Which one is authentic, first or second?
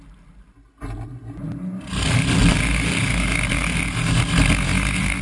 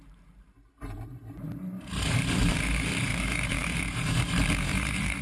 first